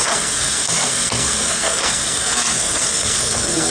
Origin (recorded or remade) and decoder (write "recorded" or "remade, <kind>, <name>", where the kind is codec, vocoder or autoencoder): remade, codec, SNAC